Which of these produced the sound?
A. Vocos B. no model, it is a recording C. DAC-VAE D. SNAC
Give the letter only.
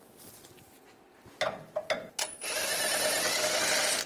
B